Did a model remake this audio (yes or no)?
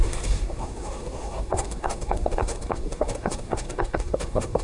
yes